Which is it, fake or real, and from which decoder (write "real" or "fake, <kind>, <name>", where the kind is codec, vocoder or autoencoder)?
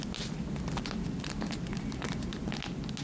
real